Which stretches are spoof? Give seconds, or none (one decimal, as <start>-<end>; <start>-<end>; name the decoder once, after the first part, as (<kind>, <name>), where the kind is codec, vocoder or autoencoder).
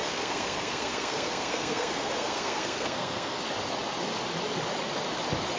0.0-3.4 (codec, SNAC)